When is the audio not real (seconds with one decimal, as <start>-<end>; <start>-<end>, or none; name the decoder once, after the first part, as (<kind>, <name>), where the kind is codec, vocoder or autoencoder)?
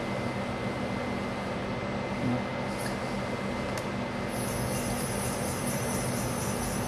none